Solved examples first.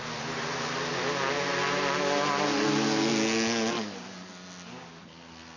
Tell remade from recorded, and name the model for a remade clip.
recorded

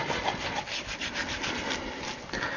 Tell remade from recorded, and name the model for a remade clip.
recorded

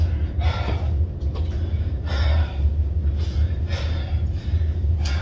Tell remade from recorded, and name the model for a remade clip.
recorded